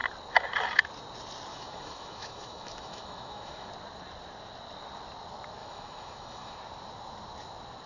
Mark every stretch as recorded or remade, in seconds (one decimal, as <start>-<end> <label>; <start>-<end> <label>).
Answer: 0.0-1.5 recorded; 1.5-3.7 remade; 3.7-5.6 recorded; 5.6-6.6 remade; 6.6-7.9 recorded